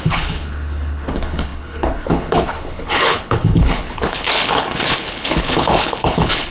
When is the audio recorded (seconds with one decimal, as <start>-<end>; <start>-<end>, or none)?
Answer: none